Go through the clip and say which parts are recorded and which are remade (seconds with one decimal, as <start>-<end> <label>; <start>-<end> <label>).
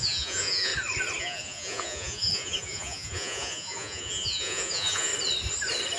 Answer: 0.0-0.7 remade; 0.7-1.2 recorded; 1.2-5.1 remade; 5.1-6.0 recorded